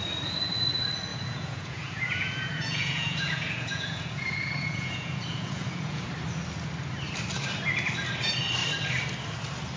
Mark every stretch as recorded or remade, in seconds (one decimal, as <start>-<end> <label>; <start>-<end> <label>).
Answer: 0.0-1.1 recorded; 1.1-6.1 remade; 6.1-9.8 recorded